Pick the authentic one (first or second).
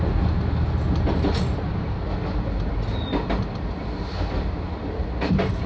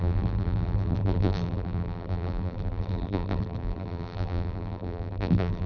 first